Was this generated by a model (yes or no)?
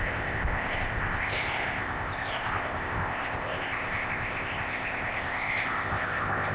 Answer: yes